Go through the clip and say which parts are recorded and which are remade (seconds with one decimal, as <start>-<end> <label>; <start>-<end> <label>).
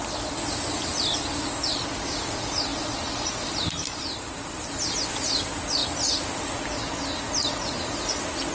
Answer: 0.0-8.5 recorded